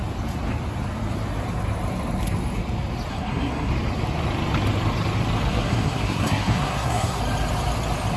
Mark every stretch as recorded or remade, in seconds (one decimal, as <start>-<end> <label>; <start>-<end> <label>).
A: 0.0-3.1 recorded; 3.1-3.7 remade; 3.7-5.5 recorded; 5.5-7.2 remade; 7.2-8.2 recorded